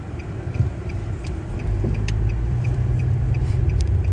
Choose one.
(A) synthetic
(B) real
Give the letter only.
A